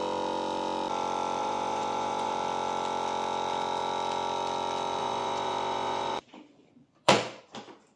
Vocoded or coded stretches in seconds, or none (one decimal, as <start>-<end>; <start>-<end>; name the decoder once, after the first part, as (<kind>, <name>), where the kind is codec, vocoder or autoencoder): 1.4-2.3 (vocoder, Vocos); 5.0-7.4